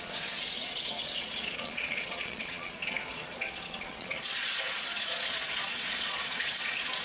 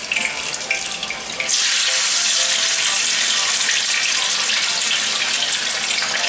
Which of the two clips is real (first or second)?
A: second